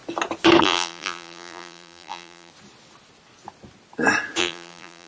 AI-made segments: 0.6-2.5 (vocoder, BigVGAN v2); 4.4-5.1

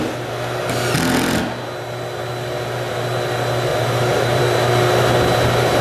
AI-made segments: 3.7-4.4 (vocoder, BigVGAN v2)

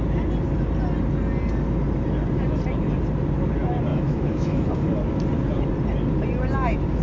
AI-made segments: 3.9-4.7 (autoencoder, DAC-VAE)

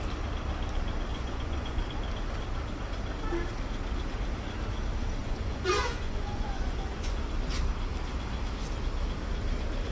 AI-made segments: 1.1-1.8 (vocoder, Vocos); 5.2-7.2